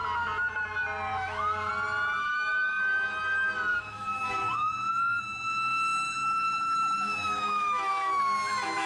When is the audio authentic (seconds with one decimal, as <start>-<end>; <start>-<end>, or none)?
0.0-1.1; 1.7-2.2; 2.8-3.7; 8.2-8.9